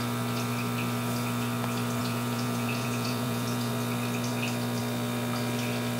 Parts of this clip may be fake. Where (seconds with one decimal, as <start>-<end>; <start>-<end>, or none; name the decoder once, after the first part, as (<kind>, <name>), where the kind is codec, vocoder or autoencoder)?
2.0-3.7 (vocoder, Vocos)